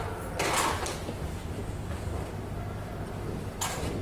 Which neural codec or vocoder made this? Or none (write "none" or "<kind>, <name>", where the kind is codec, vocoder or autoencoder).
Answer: none